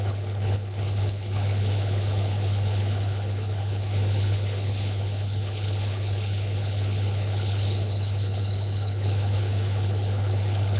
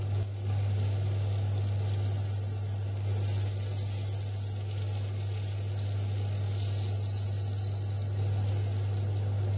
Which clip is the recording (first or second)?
second